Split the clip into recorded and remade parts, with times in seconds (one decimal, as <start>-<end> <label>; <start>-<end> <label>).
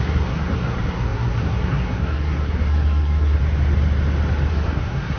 0.0-3.4 remade; 3.4-4.5 recorded; 4.5-5.2 remade